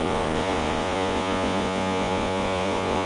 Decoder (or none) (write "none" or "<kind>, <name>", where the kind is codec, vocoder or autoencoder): vocoder, Vocos